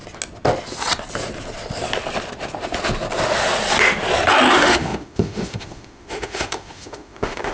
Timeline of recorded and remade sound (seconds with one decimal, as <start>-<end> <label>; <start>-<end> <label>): 0.0-4.5 recorded; 4.5-7.5 remade